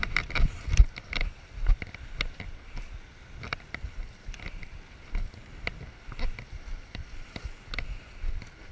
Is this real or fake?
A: real